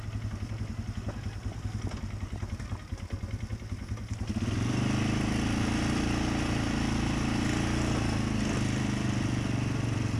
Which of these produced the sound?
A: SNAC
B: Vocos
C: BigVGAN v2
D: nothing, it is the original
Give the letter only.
D